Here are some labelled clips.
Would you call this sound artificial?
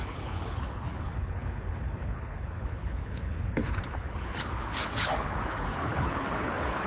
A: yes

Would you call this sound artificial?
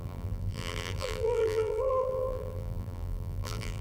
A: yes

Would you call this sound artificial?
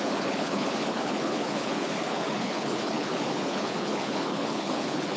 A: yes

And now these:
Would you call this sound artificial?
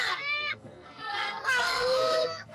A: yes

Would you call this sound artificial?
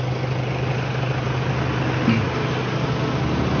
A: no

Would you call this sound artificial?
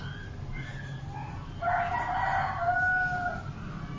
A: no